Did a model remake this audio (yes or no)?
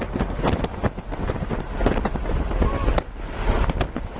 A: no